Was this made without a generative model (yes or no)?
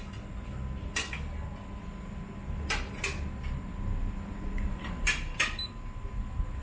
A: yes